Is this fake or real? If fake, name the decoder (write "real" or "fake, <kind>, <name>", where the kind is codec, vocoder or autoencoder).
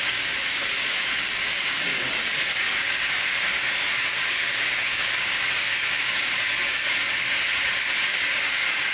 fake, codec, DAC